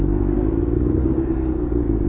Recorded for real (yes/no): no